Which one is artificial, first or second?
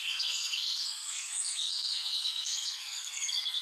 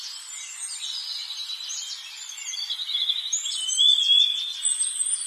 first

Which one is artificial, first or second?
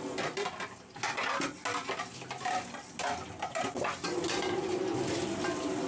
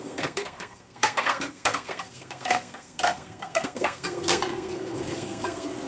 second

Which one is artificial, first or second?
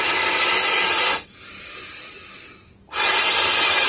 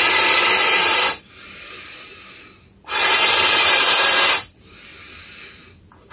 second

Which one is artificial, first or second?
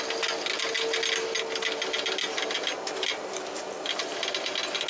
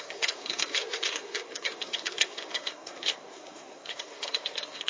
second